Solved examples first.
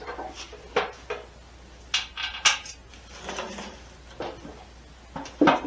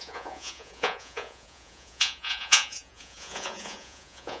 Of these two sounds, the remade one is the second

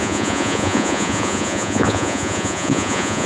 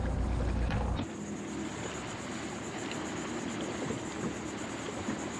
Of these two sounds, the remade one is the first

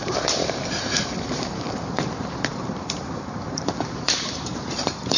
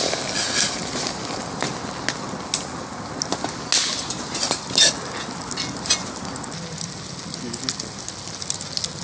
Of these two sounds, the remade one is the first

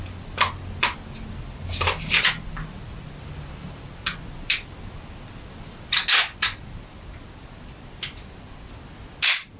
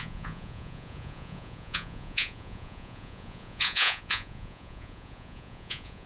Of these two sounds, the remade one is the second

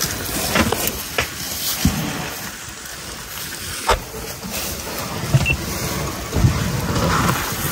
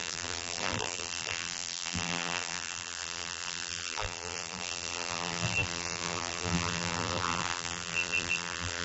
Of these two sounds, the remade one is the second